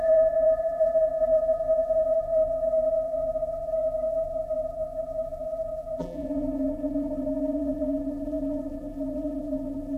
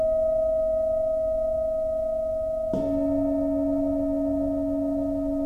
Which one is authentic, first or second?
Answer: second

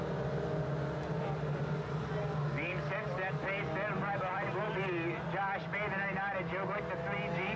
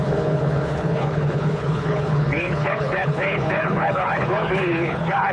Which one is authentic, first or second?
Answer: first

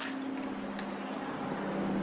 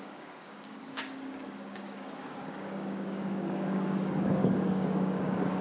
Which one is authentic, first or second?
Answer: first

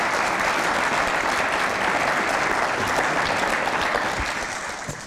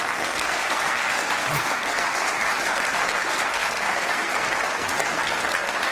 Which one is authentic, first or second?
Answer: first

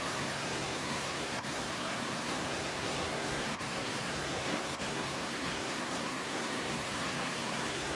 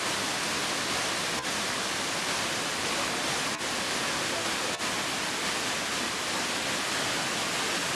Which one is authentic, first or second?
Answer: second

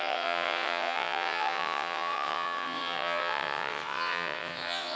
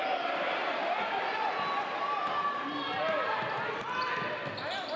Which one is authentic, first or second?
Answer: second